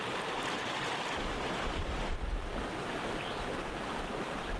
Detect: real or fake real